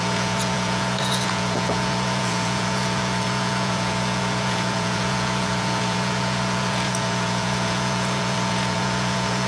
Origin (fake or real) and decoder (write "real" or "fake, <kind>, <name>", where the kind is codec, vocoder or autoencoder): fake, vocoder, Vocos